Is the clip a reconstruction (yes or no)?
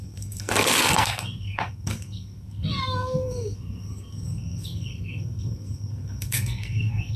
yes